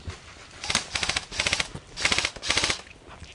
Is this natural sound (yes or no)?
no